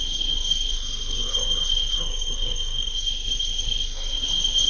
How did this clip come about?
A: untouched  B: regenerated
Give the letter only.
B